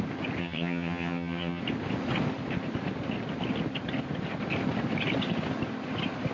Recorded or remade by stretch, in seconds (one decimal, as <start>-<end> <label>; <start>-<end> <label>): 0.0-0.4 recorded; 0.4-1.6 remade; 1.6-6.3 recorded